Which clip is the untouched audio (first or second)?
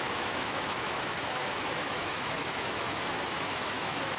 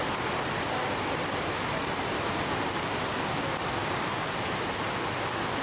second